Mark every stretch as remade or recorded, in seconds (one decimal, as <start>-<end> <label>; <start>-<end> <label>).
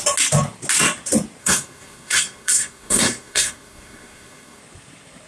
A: 0.0-1.4 recorded; 1.4-4.6 remade; 4.6-5.3 recorded